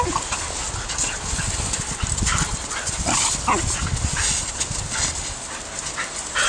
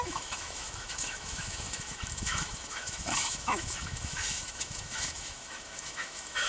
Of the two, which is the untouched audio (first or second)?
first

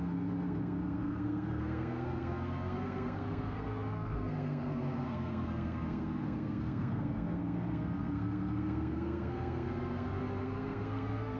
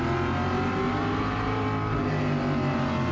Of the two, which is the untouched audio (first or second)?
second